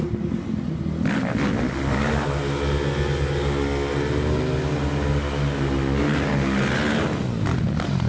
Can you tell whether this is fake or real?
real